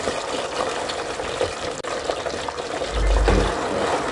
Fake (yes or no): no